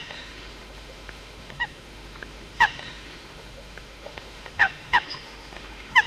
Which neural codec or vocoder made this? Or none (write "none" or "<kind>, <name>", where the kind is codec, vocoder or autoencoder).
autoencoder, DAC-VAE